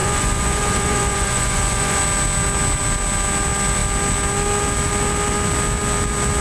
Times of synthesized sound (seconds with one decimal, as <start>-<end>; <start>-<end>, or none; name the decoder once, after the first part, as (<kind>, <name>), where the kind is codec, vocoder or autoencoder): 0.0-2.0 (vocoder, Vocos)